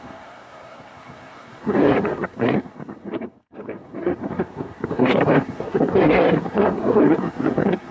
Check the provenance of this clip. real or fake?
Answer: fake